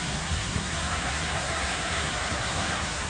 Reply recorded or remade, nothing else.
remade